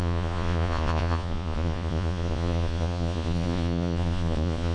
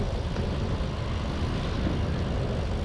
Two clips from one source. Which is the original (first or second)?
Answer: second